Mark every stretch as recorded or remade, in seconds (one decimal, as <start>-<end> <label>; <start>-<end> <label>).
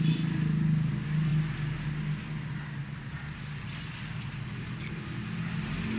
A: 0.0-6.0 recorded